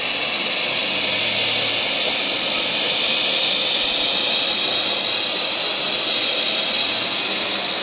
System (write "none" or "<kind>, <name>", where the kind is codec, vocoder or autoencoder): none